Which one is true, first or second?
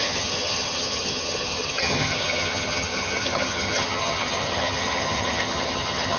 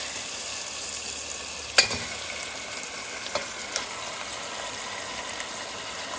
second